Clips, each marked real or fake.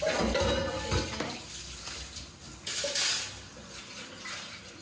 real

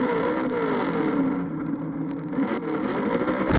real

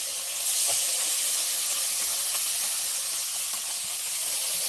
real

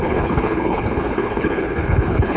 fake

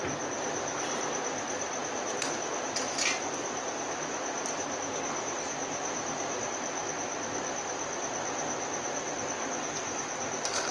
real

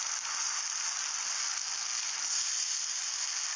real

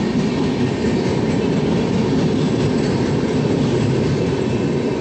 real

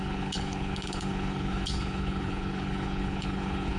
fake